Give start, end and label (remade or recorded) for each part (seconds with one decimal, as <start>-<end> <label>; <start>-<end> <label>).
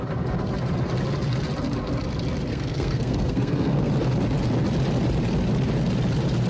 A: 0.0-2.5 recorded; 2.5-3.9 remade; 3.9-6.5 recorded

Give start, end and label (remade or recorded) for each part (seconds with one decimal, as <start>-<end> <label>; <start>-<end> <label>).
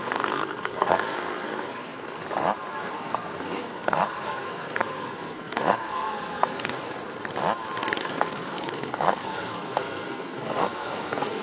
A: 0.0-2.2 remade; 2.2-2.9 recorded; 2.9-6.8 remade; 6.8-8.0 recorded; 8.0-11.4 remade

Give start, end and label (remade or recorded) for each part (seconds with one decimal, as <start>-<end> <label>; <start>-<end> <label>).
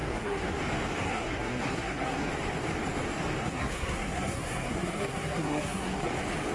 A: 0.0-0.6 remade; 0.6-1.0 recorded; 1.0-2.3 remade; 2.3-3.4 recorded; 3.4-6.1 remade; 6.1-6.5 recorded